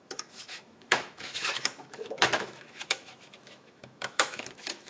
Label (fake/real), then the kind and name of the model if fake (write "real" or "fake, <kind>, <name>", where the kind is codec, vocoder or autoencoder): fake, autoencoder, DAC-VAE